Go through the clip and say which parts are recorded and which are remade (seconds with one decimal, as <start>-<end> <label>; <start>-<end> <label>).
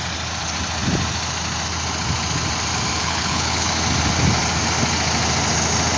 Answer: 0.0-3.0 recorded; 3.0-3.7 remade; 3.7-6.0 recorded